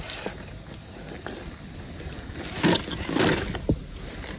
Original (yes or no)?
yes